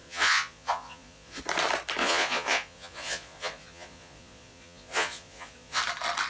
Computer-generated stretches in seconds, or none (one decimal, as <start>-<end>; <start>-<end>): 0.0-1.4; 2.0-5.8